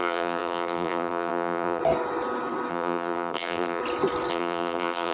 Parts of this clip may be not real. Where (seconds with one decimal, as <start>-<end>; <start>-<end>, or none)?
0.0-1.8; 2.7-3.8; 4.3-5.1

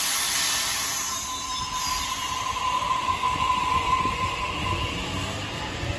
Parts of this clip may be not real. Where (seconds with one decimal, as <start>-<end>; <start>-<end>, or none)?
2.6-4.8; 5.5-6.0

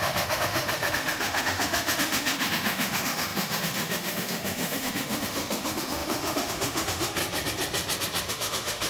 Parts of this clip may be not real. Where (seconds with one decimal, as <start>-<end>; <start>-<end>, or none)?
0.0-7.2; 8.3-8.9

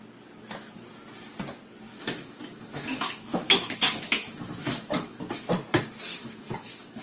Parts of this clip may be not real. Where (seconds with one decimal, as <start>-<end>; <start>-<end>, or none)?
1.9-5.5; 6.1-7.0